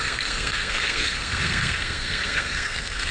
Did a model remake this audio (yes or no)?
yes